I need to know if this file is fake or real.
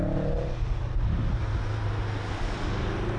real